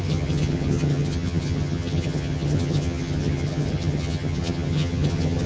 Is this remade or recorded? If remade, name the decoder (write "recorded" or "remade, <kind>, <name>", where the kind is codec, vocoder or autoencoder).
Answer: remade, vocoder, HiFi-GAN